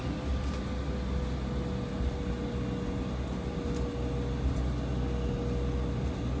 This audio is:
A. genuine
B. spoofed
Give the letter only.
A